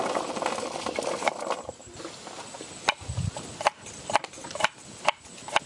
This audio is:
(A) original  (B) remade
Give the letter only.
A